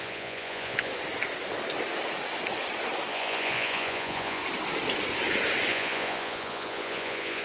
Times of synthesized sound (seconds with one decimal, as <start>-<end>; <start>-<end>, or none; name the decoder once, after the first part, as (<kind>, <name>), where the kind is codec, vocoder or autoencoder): 0.0-0.9 (vocoder, Vocos); 3.1-4.4; 5.7-7.4